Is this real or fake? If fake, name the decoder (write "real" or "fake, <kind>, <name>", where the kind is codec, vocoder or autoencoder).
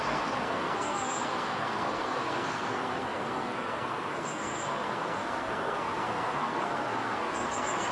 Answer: fake, codec, SNAC